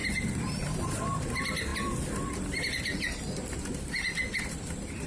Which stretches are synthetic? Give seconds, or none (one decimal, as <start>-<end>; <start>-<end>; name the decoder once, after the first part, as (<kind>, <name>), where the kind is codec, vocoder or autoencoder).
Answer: 0.0-5.1 (vocoder, BigVGAN v2)